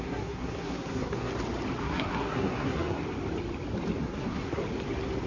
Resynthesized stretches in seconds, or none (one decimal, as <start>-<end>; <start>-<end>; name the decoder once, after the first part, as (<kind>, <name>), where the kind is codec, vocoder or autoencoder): 0.0-1.3 (codec, SNAC); 1.8-3.0; 4.0-4.6